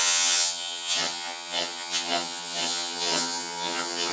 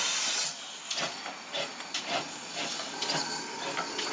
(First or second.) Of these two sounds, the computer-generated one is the first